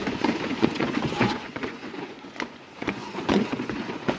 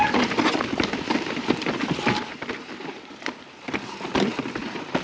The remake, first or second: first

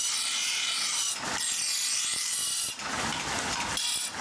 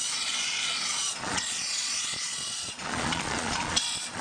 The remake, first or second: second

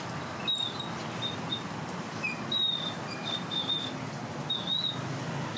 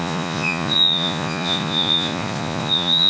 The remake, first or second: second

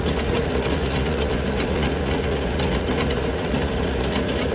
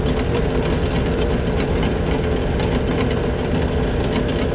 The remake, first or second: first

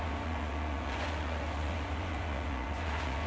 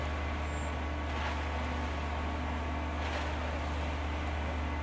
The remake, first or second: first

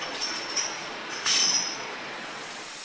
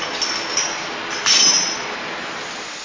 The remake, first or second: first